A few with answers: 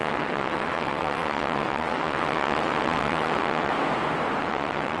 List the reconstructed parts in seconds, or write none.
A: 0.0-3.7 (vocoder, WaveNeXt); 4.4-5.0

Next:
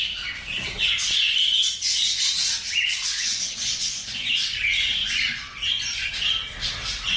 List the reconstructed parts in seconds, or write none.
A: 3.0-4.3 (vocoder, Vocos); 5.0-6.1